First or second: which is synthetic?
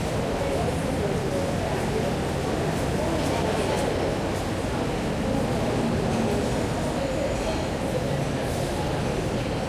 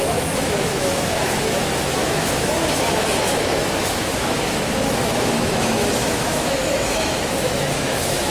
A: second